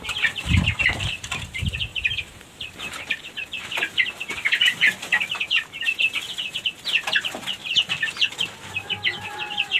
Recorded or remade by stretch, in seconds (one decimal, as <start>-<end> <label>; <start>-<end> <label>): 0.0-9.8 recorded